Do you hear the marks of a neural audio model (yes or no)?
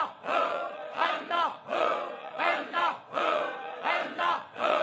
yes